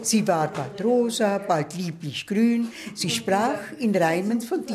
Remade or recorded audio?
recorded